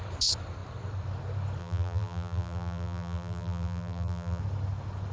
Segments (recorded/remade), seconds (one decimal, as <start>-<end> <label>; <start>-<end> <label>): 0.0-1.6 recorded; 1.6-4.4 remade; 4.4-5.1 recorded